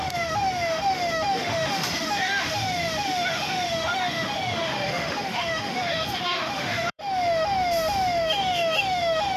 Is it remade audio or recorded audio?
remade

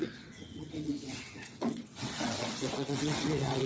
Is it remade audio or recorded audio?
remade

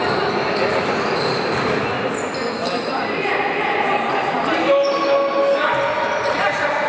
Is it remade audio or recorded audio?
recorded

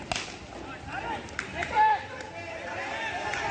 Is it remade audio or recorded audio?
recorded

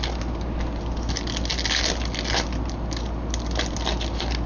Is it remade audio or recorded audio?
recorded